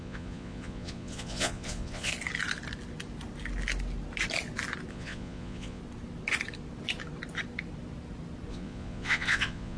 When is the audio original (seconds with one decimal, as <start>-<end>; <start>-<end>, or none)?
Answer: 2.1-4.9; 5.8-8.5